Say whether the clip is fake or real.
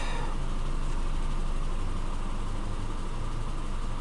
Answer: real